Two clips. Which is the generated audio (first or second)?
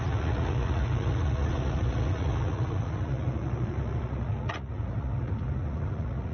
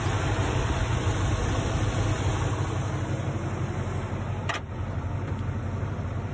first